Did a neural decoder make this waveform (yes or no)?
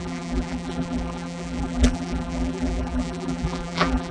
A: yes